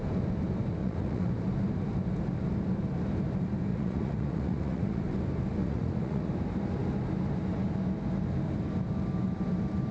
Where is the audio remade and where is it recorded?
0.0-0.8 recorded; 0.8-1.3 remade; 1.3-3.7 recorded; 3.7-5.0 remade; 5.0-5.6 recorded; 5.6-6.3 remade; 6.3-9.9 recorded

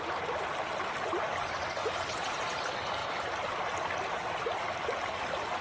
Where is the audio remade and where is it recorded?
0.0-1.8 recorded; 1.8-2.4 remade; 2.4-5.6 recorded

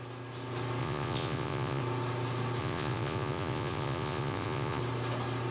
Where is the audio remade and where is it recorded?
0.0-0.8 recorded; 0.8-1.8 remade; 1.8-2.6 recorded; 2.6-4.8 remade; 4.8-5.5 recorded